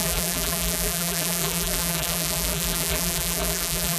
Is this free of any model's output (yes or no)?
no